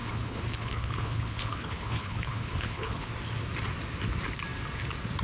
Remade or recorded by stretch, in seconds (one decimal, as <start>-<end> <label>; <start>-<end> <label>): 0.0-3.1 remade; 3.1-5.2 recorded